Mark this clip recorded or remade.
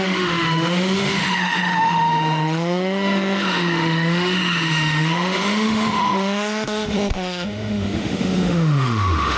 remade